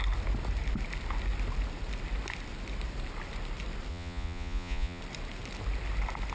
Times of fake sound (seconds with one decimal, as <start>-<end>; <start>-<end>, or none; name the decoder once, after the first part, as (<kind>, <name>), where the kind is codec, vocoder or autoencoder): 3.9-5.0 (vocoder, Vocos)